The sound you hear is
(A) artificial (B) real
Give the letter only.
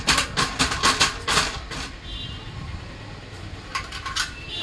A